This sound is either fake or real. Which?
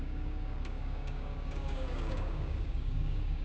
fake